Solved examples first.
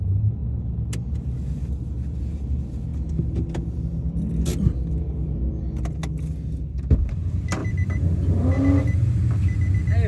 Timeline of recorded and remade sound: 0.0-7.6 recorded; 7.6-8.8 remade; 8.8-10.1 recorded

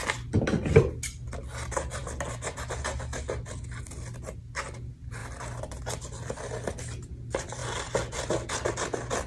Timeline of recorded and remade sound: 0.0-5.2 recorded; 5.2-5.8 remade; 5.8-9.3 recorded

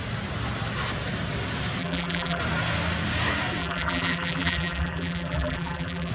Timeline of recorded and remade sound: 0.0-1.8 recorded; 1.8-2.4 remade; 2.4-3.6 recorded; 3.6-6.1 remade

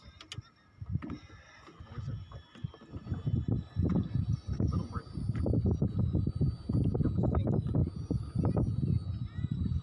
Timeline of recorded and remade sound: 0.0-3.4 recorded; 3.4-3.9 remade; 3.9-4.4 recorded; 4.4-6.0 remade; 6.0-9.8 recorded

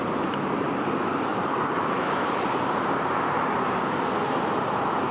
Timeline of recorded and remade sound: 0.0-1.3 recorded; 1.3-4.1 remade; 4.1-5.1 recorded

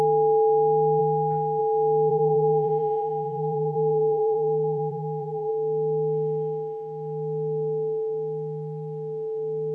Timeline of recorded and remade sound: 0.0-2.1 recorded; 2.1-5.5 remade; 5.5-9.7 recorded

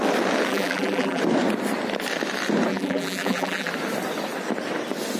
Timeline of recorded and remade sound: 0.0-0.5 recorded; 0.5-1.2 remade; 1.2-2.7 recorded; 2.7-3.7 remade; 3.7-5.2 recorded

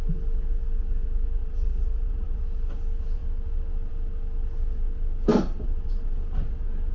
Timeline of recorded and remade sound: 0.0-1.4 recorded; 1.4-2.4 remade; 2.4-5.3 recorded; 5.3-6.2 remade; 6.2-6.9 recorded